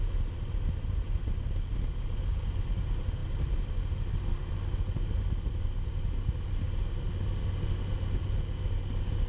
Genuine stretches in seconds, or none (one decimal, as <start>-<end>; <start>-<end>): 0.0-9.3

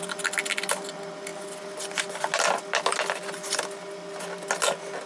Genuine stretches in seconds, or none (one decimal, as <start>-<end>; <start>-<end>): 0.0-5.1

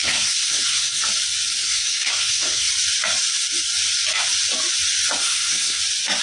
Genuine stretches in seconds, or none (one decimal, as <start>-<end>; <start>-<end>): 1.0-1.6; 2.7-5.2; 5.8-6.2

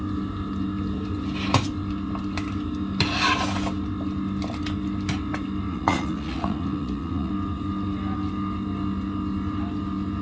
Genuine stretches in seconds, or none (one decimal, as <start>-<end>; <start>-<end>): 0.0-5.7; 7.3-10.2

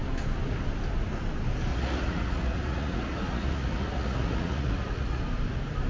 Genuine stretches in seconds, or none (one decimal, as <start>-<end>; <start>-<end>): 0.0-1.7; 5.2-5.9